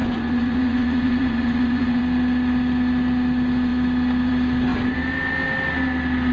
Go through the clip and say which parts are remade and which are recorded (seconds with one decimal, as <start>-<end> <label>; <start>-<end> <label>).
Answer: 0.0-2.0 remade; 2.0-6.3 recorded